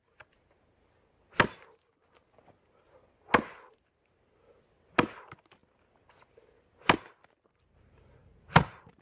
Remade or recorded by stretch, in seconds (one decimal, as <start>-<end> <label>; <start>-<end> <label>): 0.0-9.0 recorded